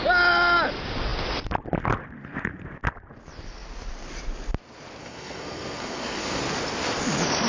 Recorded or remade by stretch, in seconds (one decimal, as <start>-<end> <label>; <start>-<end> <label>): 0.0-5.0 recorded; 5.0-6.4 remade; 6.4-7.5 recorded